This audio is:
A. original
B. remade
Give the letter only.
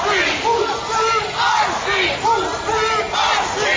A